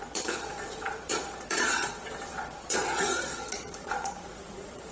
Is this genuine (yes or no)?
no